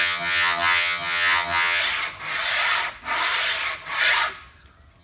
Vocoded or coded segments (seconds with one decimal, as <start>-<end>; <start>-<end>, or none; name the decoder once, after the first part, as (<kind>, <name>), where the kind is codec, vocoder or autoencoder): 0.0-1.8 (vocoder, HiFi-GAN)